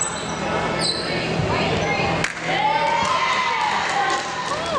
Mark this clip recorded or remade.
recorded